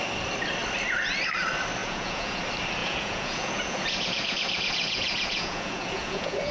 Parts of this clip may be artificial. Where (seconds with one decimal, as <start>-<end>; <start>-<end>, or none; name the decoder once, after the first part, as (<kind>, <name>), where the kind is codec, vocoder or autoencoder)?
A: 1.8-2.4 (vocoder, Vocos); 2.8-6.5